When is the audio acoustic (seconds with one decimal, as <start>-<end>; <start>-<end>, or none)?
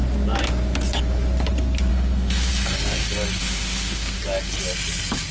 0.0-1.9; 2.5-3.4; 4.2-5.3